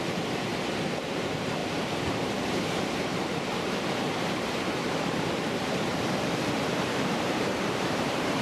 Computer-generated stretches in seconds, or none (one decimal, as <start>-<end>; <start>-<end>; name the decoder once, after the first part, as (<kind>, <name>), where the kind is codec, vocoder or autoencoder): 0.0-0.5 (vocoder, BigVGAN v2); 1.2-8.4

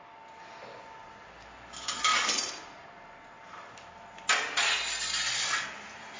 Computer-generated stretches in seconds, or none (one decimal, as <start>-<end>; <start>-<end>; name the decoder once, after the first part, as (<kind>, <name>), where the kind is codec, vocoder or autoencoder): none

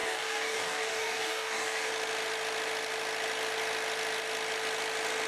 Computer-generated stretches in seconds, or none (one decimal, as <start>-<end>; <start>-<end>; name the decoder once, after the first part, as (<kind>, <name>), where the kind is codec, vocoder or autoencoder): 0.0-1.9 (codec, DAC)

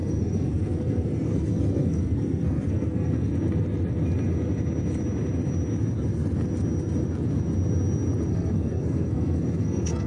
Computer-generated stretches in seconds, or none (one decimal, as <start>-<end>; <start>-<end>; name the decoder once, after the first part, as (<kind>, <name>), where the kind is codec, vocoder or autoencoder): 0.0-3.3 (codec, SNAC); 8.3-10.1

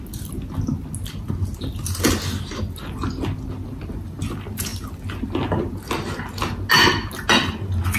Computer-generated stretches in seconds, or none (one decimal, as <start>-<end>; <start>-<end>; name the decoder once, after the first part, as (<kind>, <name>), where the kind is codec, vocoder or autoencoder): none

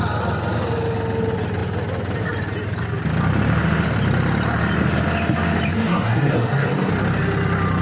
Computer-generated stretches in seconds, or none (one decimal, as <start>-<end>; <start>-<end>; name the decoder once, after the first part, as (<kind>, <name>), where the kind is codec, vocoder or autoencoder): 5.7-6.9 (codec, SNAC)

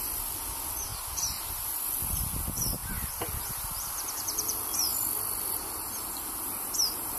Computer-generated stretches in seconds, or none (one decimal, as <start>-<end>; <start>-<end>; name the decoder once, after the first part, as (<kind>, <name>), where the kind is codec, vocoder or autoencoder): 0.0-0.9 (vocoder, BigVGAN v2); 1.5-7.2